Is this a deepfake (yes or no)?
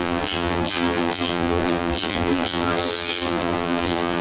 yes